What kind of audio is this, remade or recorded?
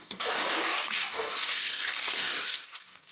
remade